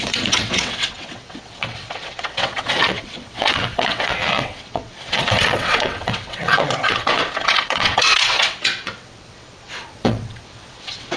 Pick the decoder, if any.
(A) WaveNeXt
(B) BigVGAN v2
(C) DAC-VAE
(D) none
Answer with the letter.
A